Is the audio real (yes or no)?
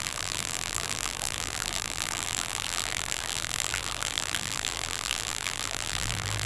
no